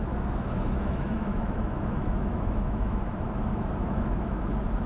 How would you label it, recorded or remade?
remade